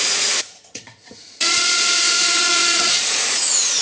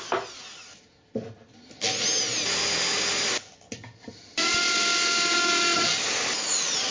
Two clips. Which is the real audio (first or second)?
second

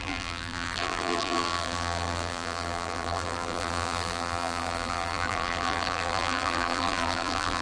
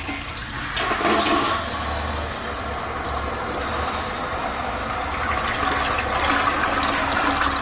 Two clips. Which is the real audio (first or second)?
second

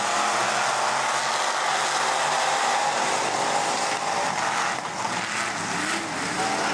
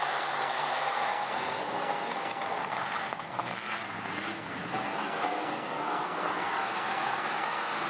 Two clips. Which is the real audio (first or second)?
first